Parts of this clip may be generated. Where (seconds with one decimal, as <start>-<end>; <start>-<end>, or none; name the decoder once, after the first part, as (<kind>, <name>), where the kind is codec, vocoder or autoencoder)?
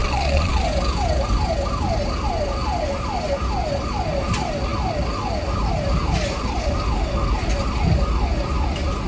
0.0-0.6 (vocoder, Vocos)